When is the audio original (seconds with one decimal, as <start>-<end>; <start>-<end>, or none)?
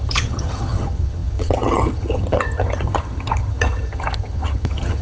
none